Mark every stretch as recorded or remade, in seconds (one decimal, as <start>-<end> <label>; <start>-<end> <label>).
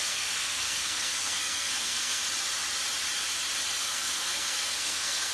0.0-2.2 remade; 2.2-3.8 recorded; 3.8-5.3 remade